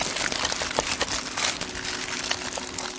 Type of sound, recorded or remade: recorded